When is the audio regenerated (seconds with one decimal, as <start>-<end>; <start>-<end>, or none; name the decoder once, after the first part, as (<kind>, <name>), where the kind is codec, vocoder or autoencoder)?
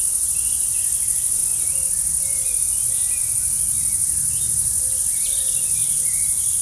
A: none